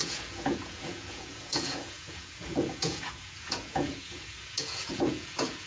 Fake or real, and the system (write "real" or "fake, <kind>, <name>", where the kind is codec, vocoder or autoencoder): fake, vocoder, Vocos